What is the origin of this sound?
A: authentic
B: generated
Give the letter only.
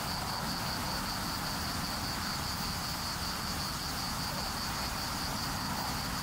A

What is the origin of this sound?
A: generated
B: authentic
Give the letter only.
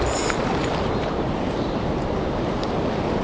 B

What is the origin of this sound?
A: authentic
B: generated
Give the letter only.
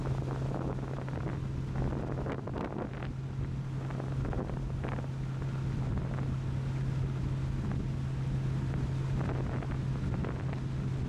A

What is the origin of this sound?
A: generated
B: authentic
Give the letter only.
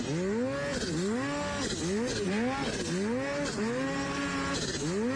B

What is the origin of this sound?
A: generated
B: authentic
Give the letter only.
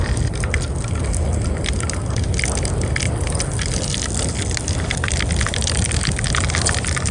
B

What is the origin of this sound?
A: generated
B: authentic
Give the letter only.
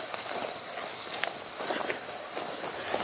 B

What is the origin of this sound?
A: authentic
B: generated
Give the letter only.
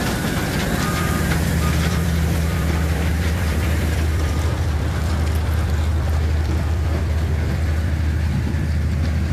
B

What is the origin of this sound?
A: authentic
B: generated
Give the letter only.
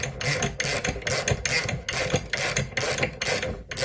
A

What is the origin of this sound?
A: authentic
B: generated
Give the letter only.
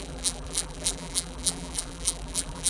B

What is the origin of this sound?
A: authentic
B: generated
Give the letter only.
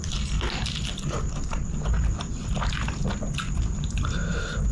A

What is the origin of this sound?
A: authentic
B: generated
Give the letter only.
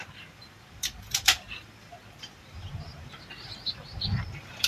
B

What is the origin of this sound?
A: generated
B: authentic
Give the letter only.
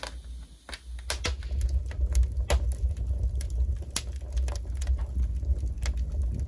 B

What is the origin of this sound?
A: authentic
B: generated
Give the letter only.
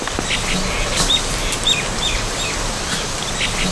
A